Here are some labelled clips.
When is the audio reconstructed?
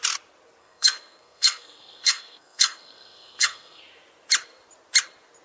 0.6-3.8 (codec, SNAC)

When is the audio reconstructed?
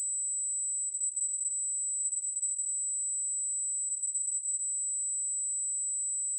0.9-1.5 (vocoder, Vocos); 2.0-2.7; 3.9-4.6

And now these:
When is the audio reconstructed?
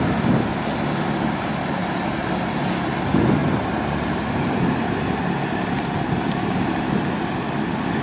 none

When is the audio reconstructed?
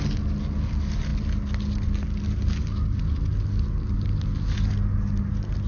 none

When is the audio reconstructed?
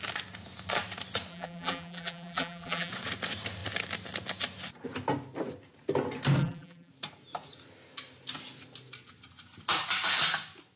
1.3-2.9 (vocoder, BigVGAN v2); 6.4-6.9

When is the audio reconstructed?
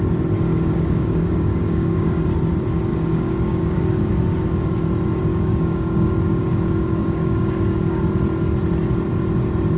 0.5-2.2 (codec, DAC); 2.9-4.1; 5.3-8.0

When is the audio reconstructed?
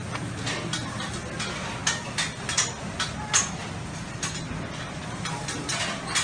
none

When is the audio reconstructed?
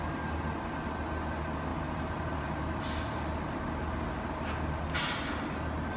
1.7-2.7 (vocoder, BigVGAN v2)